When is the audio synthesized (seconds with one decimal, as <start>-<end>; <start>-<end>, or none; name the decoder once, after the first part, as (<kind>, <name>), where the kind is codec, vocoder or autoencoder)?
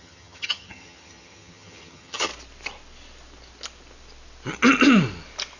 0.0-2.3 (vocoder, HiFi-GAN)